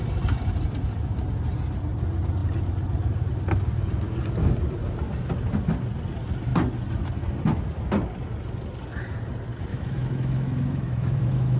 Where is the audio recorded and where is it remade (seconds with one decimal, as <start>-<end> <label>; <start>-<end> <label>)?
0.0-9.7 recorded; 9.7-11.6 remade